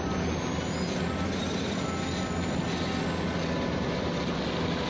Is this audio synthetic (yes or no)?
no